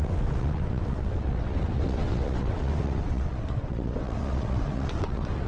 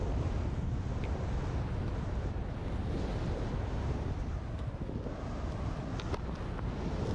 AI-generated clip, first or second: first